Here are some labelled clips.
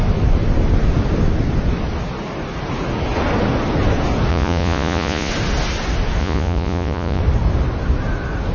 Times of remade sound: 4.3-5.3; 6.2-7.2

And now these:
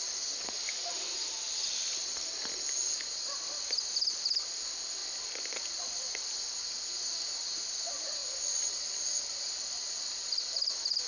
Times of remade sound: none

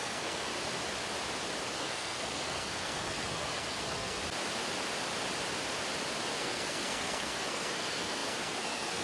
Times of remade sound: 0.0-0.5; 1.8-4.2; 6.4-9.0